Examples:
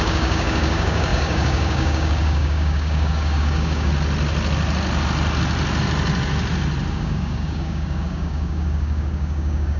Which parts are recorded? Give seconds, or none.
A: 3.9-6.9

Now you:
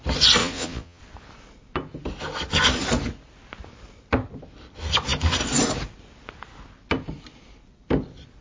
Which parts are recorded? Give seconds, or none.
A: 0.0-0.4; 1.0-8.4

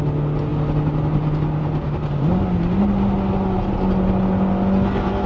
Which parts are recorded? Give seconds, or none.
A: 0.0-5.3